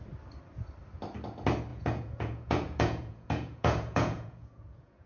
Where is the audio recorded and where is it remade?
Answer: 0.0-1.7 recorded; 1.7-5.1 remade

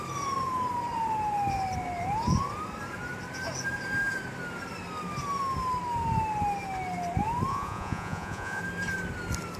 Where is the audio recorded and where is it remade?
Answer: 0.0-7.5 recorded; 7.5-8.6 remade; 8.6-9.6 recorded

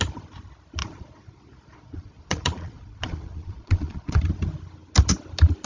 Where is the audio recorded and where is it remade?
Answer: 0.0-0.8 recorded; 0.8-4.2 remade; 4.2-5.7 recorded

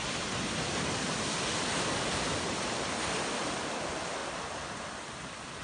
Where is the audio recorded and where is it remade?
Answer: 0.0-5.6 recorded

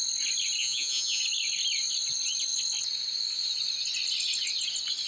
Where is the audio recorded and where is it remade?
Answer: 0.0-0.6 recorded; 0.6-1.2 remade; 1.2-5.1 recorded

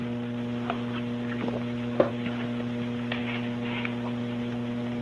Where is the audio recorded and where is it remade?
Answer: 0.0-5.0 recorded